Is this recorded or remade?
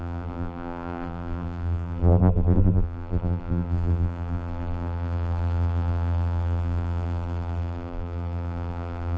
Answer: remade